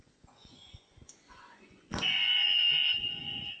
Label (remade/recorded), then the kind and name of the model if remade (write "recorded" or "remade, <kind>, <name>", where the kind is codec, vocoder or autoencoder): remade, vocoder, Vocos